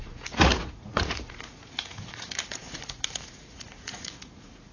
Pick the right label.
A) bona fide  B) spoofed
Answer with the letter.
B